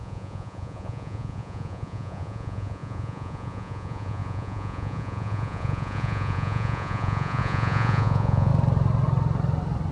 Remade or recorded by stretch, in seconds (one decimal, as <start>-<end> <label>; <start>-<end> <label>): 0.0-8.5 remade; 8.5-9.9 recorded